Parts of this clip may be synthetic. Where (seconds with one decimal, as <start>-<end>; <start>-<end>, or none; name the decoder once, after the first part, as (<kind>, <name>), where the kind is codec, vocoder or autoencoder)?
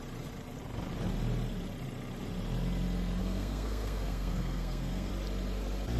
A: 3.2-5.1 (codec, SNAC)